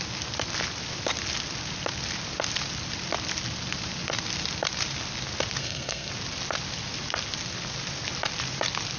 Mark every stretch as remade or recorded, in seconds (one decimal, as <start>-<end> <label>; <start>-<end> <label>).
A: 0.0-5.6 recorded; 5.6-6.1 remade; 6.1-9.0 recorded

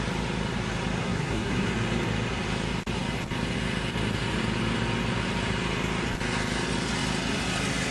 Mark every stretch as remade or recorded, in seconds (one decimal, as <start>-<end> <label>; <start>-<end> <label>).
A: 0.0-1.0 recorded; 1.0-1.7 remade; 1.7-7.9 recorded

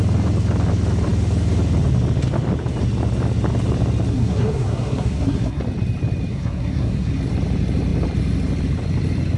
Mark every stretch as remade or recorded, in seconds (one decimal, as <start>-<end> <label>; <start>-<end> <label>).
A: 0.0-4.1 recorded; 4.1-5.6 remade; 5.6-6.3 recorded; 6.3-7.1 remade; 7.1-9.4 recorded

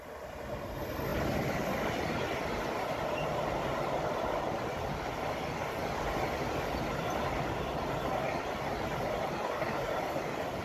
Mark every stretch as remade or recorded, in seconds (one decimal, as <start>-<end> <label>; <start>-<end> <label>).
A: 0.0-10.6 recorded

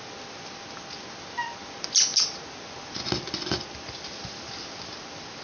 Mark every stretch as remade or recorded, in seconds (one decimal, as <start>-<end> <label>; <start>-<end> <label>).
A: 0.0-5.4 recorded

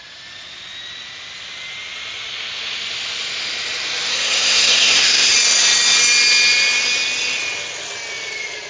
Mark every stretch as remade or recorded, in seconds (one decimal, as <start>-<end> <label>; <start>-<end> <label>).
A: 0.0-4.1 recorded; 4.1-5.3 remade; 5.3-8.7 recorded

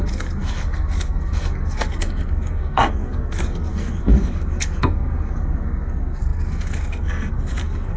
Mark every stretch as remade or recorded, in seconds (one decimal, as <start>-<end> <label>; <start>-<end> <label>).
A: 0.0-8.0 remade